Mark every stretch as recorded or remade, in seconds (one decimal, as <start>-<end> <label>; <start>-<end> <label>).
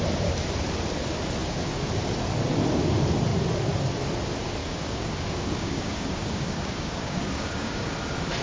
0.0-1.4 recorded; 1.4-1.9 remade; 1.9-4.6 recorded; 4.6-7.9 remade; 7.9-8.4 recorded